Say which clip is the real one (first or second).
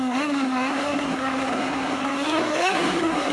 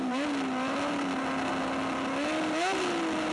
second